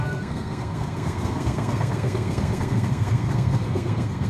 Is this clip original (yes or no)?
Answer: no